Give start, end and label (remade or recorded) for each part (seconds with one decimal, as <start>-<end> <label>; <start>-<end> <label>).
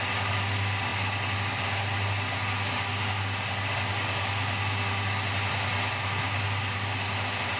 0.0-7.6 recorded